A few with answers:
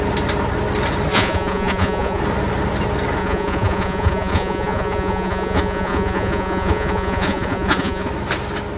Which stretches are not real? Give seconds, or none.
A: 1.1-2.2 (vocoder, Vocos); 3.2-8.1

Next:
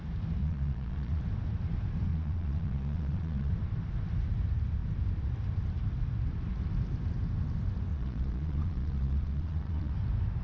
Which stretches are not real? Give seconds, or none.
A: 0.4-1.2 (vocoder, Vocos); 2.1-3.5; 7.9-9.9

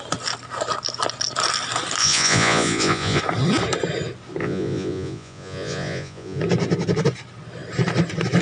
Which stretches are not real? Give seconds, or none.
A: 2.0-3.2 (vocoder, Vocos); 4.4-6.4

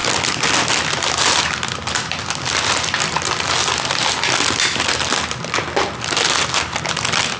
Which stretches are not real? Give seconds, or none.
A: none

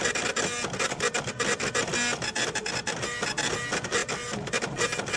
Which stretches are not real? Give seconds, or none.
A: none

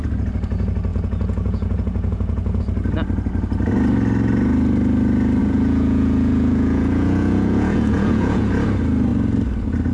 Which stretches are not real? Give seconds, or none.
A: 0.9-2.6 (vocoder, Vocos); 5.4-8.5